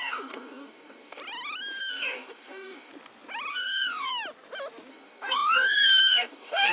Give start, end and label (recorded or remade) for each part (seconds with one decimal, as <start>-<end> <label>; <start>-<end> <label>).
0.0-1.2 remade; 1.2-1.8 recorded; 1.8-2.9 remade; 2.9-3.5 recorded; 3.5-4.1 remade; 4.1-4.9 recorded; 4.9-6.7 remade